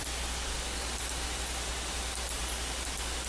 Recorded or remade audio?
recorded